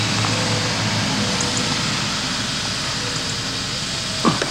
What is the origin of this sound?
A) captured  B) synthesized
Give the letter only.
A